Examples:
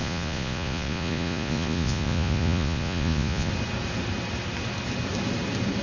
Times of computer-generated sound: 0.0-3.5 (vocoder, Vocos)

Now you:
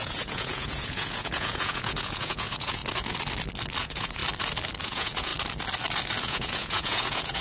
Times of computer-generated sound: 0.0-2.8 (vocoder, Vocos); 3.8-4.2; 4.8-5.3; 6.2-7.4

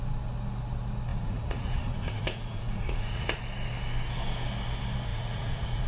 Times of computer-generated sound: 1.1-3.4 (vocoder, Vocos); 5.1-5.9

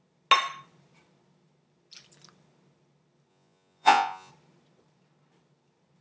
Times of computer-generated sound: 3.3-4.3 (vocoder, Vocos)

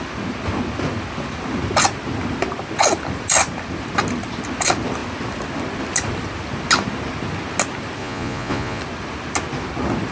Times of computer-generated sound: 8.0-8.8 (vocoder, Vocos)